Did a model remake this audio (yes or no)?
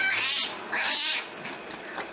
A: no